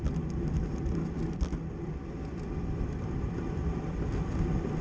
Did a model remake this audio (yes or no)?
no